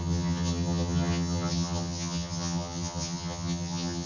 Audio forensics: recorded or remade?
remade